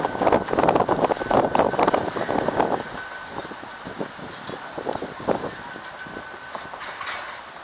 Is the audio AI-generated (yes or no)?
no